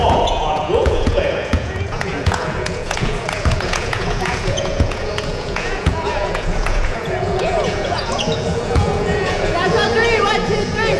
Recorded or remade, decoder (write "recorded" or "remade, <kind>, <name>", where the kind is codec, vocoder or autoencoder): remade, vocoder, Vocos